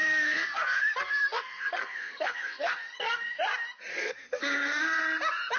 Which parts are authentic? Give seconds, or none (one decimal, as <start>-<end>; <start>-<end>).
3.4-3.9; 5.0-5.6